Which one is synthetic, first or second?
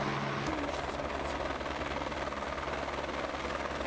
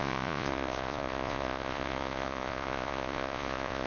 second